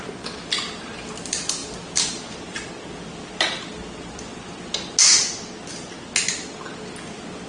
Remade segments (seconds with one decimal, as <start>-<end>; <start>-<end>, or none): none